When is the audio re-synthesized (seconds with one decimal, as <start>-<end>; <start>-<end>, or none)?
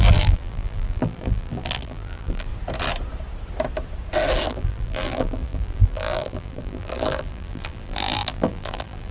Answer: 0.0-2.5; 4.5-9.1